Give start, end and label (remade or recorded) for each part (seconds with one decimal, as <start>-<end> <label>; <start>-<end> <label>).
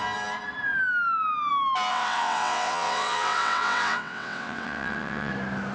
0.0-1.9 recorded; 1.9-5.3 remade; 5.3-5.7 recorded